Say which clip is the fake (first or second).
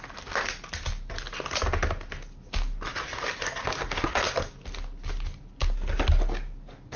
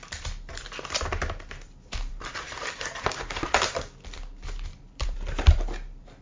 second